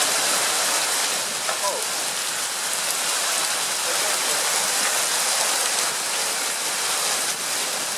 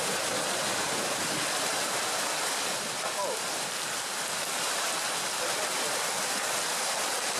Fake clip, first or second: second